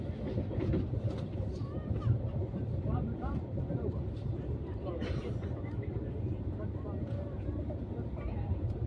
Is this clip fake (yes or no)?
yes